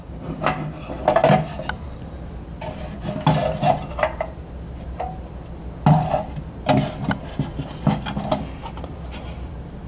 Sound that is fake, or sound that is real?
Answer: real